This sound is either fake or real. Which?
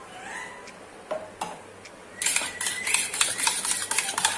real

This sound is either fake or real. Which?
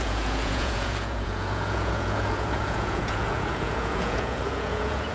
fake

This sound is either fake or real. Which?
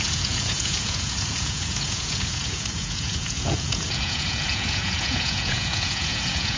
fake